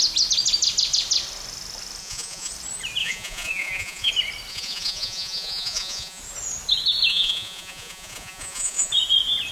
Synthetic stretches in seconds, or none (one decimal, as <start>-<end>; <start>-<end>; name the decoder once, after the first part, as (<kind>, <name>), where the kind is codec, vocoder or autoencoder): 2.0-2.5 (vocoder, Vocos); 3.0-4.1; 4.5-6.2; 7.1-8.9